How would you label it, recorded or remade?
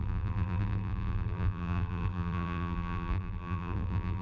remade